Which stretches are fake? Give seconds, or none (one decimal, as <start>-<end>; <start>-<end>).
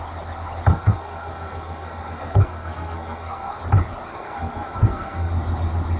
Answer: 0.7-3.6; 4.1-5.3